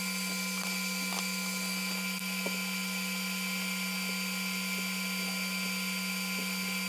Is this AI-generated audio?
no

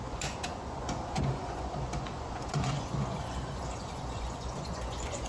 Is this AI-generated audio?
yes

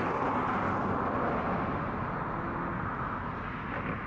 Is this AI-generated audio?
no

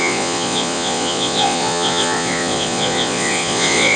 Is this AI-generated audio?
yes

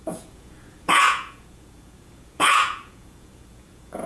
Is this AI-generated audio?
yes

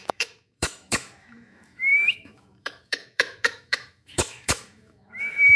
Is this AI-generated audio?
yes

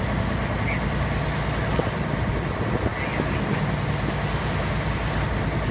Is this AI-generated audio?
no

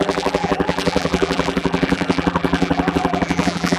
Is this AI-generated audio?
yes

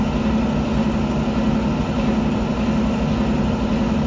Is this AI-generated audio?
no